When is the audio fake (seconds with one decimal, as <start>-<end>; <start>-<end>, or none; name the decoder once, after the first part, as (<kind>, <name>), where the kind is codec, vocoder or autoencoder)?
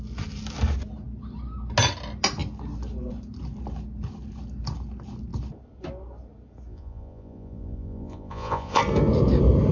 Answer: 6.7-8.8 (vocoder, Vocos)